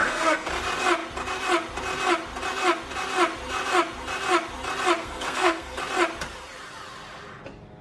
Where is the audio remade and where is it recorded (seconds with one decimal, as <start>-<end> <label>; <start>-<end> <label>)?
0.0-0.5 remade; 0.5-5.0 recorded; 5.0-5.8 remade; 5.8-7.8 recorded